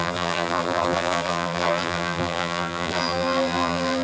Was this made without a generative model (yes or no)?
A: no